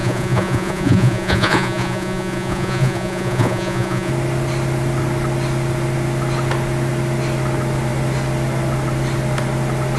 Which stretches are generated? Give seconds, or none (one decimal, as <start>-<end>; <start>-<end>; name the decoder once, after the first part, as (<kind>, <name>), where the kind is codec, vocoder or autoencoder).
0.0-4.1 (vocoder, Vocos)